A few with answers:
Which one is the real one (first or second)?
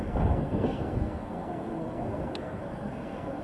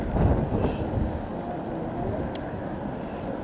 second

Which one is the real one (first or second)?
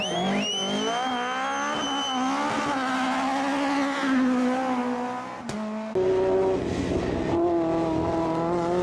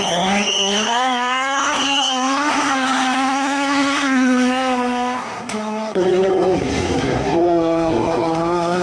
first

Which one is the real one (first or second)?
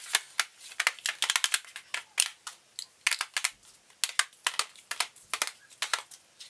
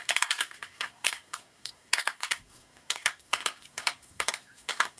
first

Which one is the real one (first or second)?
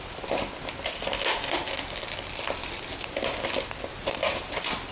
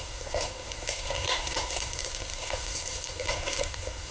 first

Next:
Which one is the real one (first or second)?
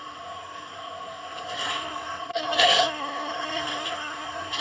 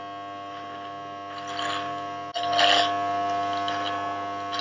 second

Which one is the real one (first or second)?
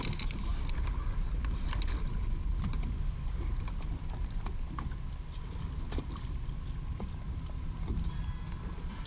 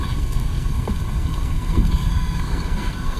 first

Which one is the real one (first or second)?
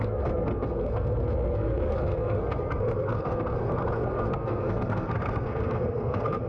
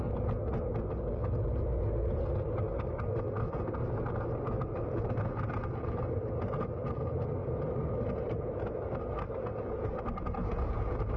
second